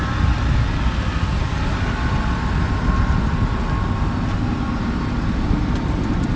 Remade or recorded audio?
recorded